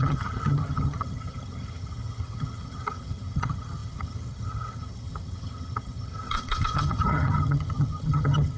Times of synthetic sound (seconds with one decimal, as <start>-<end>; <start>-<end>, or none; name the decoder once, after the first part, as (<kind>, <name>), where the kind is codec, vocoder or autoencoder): 0.0-8.6 (vocoder, HiFi-GAN)